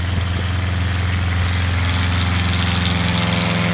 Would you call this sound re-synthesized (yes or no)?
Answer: no